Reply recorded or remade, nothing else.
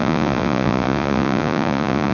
remade